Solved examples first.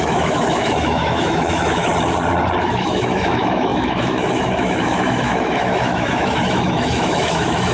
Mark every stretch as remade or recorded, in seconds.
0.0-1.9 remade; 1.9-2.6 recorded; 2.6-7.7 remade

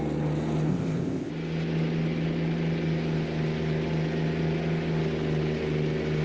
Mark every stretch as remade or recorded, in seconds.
0.0-0.7 recorded; 0.7-1.3 remade; 1.3-6.2 recorded

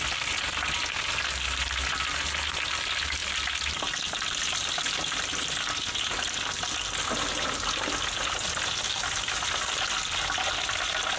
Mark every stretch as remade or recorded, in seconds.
0.0-11.2 recorded

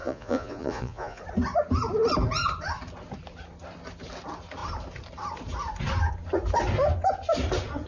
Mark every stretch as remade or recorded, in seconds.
0.0-1.2 remade; 1.2-7.9 recorded